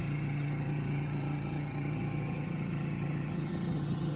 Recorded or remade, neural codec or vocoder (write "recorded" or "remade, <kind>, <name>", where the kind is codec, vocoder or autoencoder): remade, vocoder, HiFi-GAN